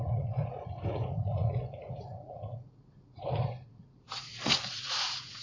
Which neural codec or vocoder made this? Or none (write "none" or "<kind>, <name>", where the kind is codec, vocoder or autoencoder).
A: vocoder, Vocos